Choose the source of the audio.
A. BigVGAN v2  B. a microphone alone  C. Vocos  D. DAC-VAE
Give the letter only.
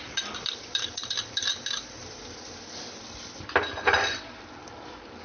A